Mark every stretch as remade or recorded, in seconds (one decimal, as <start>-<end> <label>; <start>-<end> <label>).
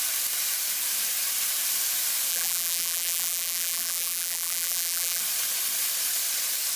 0.0-2.3 recorded; 2.3-5.2 remade; 5.2-6.8 recorded